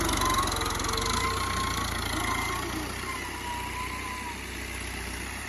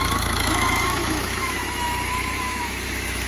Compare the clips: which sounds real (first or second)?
first